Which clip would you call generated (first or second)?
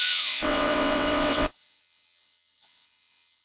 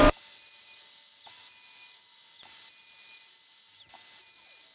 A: first